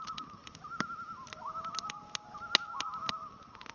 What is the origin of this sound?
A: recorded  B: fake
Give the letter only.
A